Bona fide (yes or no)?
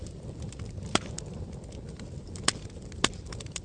no